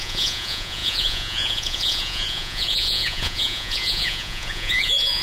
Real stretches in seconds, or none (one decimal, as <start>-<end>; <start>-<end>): none